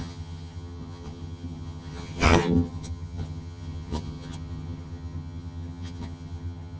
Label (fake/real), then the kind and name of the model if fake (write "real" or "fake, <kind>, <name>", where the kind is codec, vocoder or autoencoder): fake, vocoder, HiFi-GAN